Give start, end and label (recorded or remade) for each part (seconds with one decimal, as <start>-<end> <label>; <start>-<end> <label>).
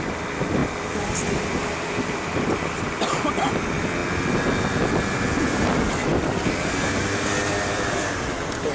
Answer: 0.0-4.0 remade; 4.0-5.6 recorded; 5.6-8.7 remade